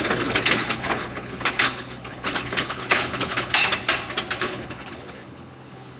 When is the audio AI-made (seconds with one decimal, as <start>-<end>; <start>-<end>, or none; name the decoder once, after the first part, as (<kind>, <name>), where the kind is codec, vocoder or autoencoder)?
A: 0.0-3.6 (codec, HILCodec); 4.4-6.0